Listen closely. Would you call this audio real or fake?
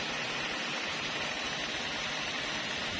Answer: real